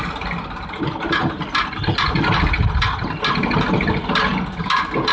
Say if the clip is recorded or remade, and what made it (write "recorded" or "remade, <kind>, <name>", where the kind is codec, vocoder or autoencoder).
recorded